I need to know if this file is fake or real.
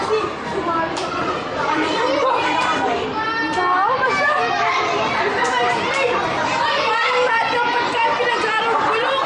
fake